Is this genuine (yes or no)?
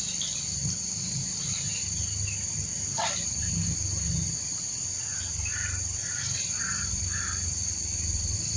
yes